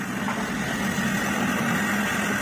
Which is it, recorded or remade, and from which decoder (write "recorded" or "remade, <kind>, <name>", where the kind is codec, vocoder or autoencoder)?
recorded